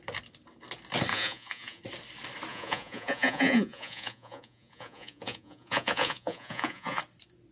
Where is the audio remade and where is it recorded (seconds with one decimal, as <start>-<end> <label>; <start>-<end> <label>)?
0.0-1.1 recorded; 1.1-1.8 remade; 1.8-2.5 recorded; 2.5-7.0 remade; 7.0-7.5 recorded